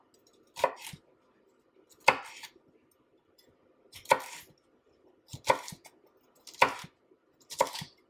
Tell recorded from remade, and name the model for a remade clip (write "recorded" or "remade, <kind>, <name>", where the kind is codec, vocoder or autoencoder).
recorded